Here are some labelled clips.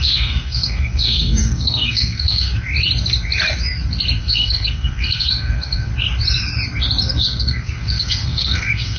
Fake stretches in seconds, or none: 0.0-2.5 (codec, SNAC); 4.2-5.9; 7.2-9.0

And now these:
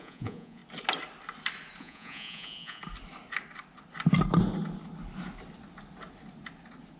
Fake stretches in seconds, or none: 0.0-0.6 (vocoder, Vocos); 1.8-2.8

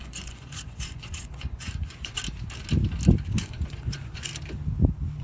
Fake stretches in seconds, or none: 0.0-2.2 (vocoder, Vocos); 3.4-4.3

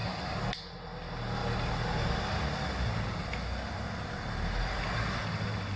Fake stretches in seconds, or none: none